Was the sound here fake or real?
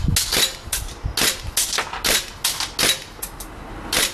real